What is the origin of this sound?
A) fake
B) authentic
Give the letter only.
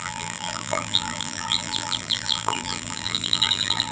A